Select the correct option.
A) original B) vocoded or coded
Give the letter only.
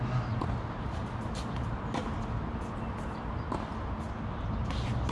A